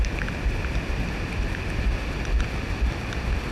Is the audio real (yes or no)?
yes